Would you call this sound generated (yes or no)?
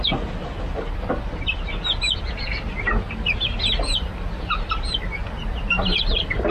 no